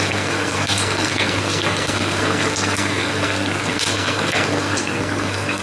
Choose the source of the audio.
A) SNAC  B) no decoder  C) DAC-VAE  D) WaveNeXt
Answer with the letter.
A